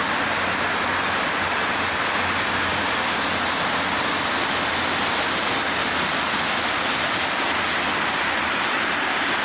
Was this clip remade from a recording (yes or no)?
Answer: no